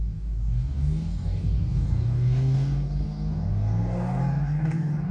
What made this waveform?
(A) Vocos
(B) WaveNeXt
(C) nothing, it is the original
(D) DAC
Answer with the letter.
D